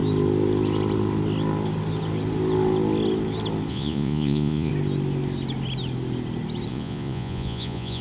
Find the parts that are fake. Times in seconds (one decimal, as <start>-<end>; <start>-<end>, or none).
3.7-4.7; 6.7-8.0